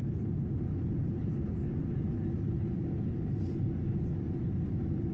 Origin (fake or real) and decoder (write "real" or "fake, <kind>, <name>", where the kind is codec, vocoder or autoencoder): real